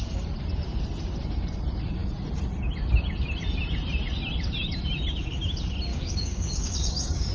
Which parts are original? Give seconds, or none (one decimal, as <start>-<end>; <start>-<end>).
0.0-5.9